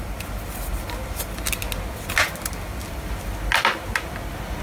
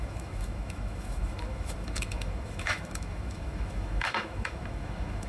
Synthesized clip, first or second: second